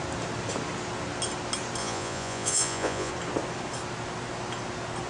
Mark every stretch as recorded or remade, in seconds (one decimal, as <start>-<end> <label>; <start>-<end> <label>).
0.0-1.8 recorded; 1.8-3.1 remade; 3.1-5.1 recorded